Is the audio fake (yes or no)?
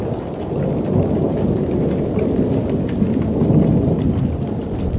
no